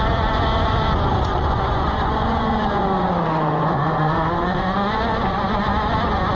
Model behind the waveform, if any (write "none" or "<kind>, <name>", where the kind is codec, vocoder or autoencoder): vocoder, Vocos